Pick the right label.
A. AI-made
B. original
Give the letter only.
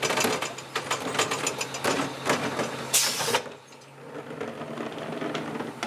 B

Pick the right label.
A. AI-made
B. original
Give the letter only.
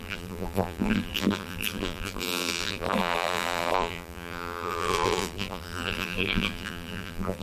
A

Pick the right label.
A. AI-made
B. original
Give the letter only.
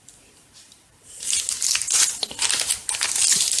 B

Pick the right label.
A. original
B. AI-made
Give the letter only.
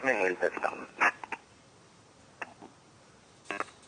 A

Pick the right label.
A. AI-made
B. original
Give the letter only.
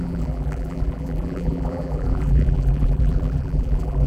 A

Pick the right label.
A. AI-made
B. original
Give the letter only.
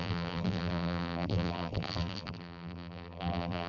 A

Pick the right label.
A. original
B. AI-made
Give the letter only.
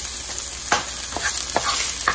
A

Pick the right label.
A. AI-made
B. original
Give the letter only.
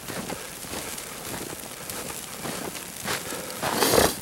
B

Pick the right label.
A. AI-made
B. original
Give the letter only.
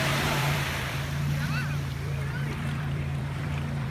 A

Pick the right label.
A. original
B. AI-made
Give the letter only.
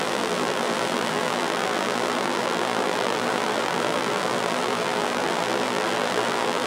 B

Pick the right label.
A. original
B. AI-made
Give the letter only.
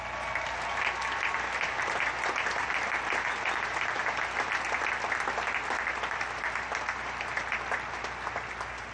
A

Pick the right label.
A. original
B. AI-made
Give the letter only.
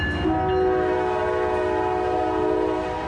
A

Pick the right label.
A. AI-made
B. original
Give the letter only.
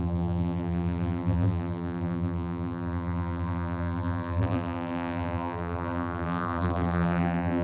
A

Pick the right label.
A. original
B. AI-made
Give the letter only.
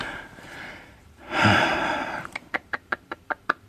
B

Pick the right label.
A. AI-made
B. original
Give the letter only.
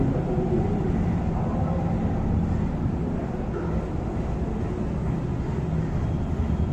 B